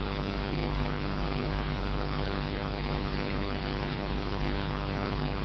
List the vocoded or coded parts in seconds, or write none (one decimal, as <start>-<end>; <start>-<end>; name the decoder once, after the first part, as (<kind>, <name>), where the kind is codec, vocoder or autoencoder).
0.0-5.4 (codec, HILCodec)